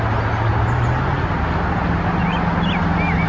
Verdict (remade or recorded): recorded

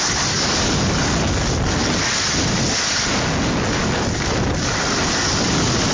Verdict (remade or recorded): recorded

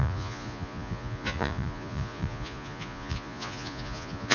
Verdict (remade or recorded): remade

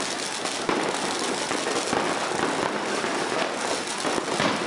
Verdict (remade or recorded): recorded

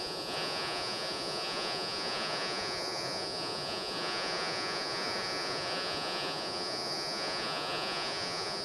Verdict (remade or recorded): remade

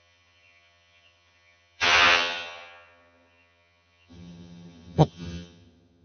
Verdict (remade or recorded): remade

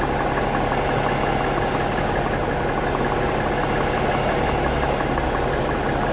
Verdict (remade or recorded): recorded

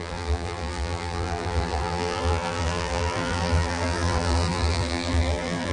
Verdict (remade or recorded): remade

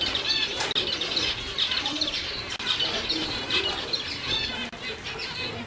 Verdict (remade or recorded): recorded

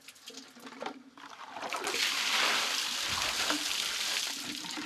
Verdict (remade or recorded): recorded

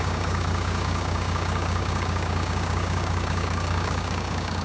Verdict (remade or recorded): remade